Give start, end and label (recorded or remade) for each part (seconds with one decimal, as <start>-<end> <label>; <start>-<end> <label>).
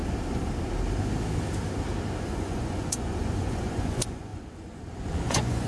0.0-2.2 recorded; 2.2-5.7 remade